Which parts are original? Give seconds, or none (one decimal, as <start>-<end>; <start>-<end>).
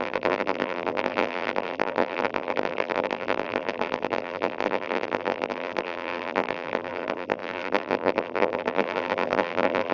none